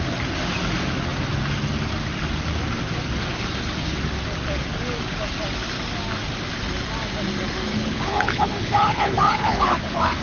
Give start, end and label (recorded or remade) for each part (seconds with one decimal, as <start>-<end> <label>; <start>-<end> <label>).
0.0-7.7 recorded; 7.7-10.2 remade